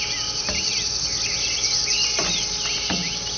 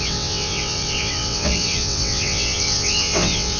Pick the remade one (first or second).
second